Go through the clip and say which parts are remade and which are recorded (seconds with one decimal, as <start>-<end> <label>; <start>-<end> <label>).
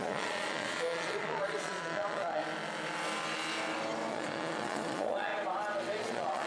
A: 0.0-2.4 remade; 2.4-4.1 recorded; 4.1-5.3 remade; 5.3-6.0 recorded; 6.0-6.5 remade